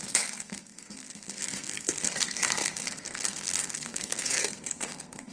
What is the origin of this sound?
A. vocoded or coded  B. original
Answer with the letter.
A